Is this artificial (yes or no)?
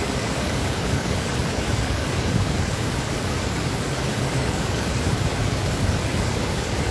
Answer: yes